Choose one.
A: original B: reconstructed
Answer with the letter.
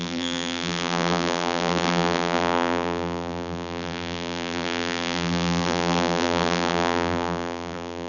B